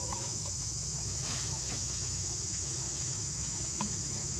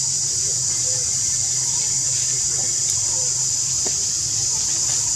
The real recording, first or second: second